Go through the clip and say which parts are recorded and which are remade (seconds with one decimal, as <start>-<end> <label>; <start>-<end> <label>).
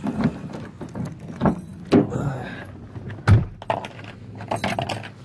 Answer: 0.0-5.2 recorded